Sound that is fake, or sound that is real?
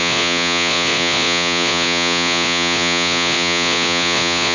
fake